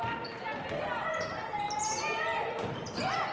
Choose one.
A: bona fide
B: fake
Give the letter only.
A